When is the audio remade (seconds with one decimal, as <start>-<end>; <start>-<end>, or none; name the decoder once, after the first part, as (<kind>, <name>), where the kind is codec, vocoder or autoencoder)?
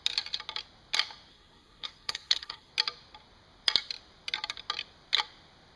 1.3-2.7 (codec, SNAC)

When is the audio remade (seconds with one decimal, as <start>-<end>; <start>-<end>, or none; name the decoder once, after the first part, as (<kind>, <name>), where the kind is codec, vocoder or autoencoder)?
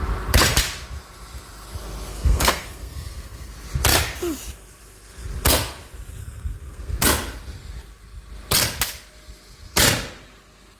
2.1-3.5 (codec, SNAC); 6.2-7.0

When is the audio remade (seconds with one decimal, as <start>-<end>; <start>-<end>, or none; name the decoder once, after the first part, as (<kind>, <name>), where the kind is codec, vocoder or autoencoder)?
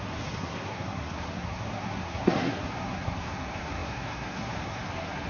0.0-5.3 (codec, SNAC)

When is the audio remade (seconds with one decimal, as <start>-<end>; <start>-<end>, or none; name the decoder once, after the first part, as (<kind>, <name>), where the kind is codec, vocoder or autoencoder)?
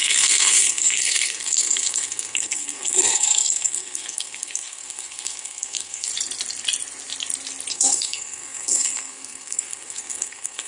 0.0-6.1 (codec, SNAC); 7.7-10.7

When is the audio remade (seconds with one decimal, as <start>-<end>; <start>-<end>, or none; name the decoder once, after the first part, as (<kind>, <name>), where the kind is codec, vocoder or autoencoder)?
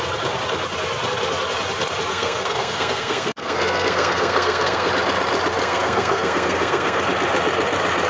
2.1-4.9 (codec, SNAC); 5.6-7.0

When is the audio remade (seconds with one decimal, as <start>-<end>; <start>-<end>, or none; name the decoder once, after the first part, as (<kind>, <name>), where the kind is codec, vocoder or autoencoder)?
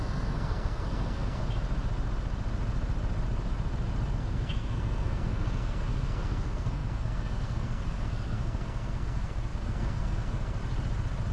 0.0-1.4 (codec, SNAC); 4.1-10.6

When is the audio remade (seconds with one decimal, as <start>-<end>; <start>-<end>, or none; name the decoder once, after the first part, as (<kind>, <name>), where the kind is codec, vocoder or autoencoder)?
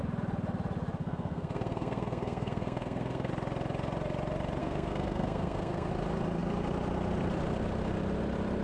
1.0-3.3 (codec, SNAC); 4.6-5.9